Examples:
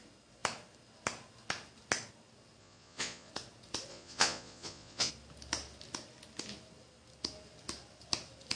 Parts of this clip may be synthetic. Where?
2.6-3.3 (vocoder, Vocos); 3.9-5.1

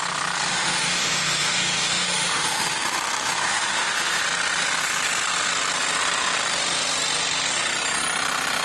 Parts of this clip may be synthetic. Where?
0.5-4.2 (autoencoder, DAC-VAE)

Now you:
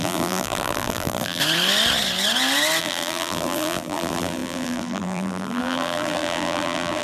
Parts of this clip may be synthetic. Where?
0.0-1.4 (vocoder, BigVGAN v2); 2.8-7.0